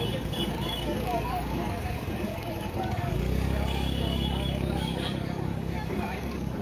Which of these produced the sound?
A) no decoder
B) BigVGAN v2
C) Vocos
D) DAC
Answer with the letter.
D